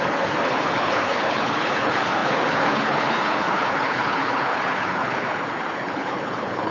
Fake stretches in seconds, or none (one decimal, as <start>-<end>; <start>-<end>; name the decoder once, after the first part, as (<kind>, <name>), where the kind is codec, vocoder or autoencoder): 0.0-6.7 (codec, HILCodec)